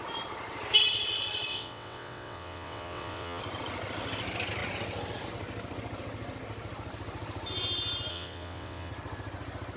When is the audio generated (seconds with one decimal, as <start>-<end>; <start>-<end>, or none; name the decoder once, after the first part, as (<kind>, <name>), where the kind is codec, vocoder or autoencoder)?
1.5-3.4 (vocoder, WaveNeXt); 8.1-8.9